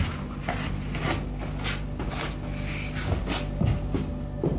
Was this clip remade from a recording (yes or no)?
no